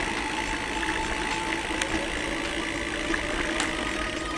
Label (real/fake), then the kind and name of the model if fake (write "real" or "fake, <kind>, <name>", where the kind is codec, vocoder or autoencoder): real